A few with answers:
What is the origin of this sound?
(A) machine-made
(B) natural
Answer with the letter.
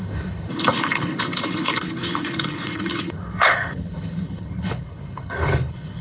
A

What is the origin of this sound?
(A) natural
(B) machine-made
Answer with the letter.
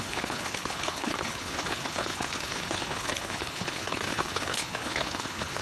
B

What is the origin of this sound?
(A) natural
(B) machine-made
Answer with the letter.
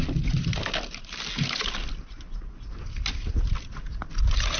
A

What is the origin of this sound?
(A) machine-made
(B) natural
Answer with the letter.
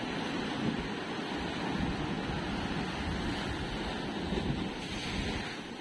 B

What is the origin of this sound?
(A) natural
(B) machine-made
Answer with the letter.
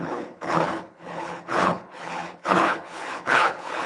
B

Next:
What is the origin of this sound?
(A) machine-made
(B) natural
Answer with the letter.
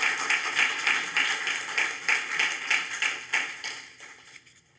B